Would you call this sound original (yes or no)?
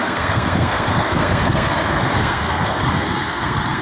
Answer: no